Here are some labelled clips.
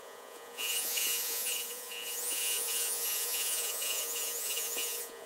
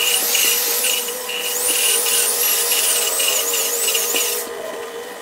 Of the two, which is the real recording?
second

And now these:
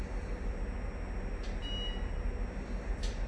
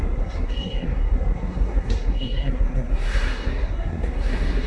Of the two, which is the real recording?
first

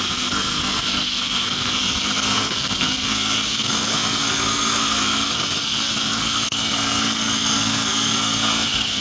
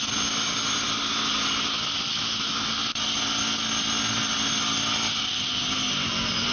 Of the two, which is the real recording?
second